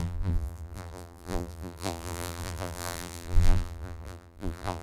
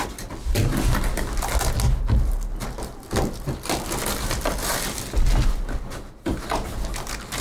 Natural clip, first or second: second